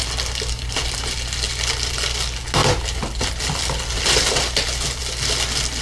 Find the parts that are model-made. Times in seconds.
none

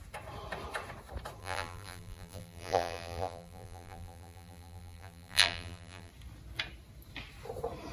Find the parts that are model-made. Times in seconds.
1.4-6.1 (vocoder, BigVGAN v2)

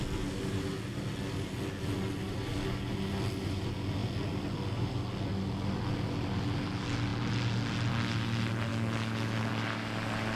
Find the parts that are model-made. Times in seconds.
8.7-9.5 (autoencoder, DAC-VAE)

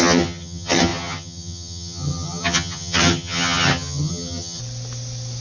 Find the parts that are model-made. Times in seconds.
0.0-4.6 (vocoder, HiFi-GAN)

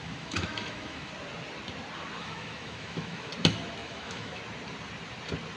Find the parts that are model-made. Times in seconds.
0.0-1.1 (autoencoder, DAC-VAE); 2.2-3.3; 3.8-4.4